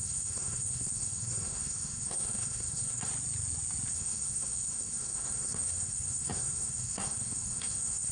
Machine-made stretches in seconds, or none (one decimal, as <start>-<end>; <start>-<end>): 0.0-3.1; 3.9-8.1